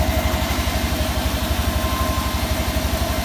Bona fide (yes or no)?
yes